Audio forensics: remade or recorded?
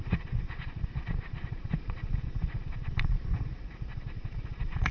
remade